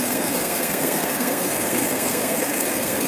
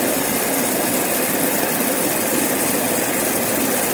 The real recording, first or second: second